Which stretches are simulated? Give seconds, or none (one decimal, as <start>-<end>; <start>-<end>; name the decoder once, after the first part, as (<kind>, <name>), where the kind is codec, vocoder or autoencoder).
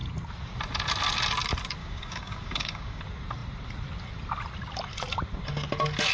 1.8-3.0 (codec, DAC)